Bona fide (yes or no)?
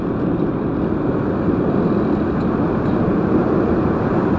yes